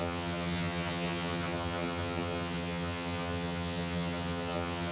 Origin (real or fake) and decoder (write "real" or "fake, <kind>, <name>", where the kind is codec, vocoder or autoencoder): fake, vocoder, HiFi-GAN